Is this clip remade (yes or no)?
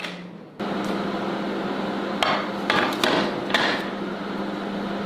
no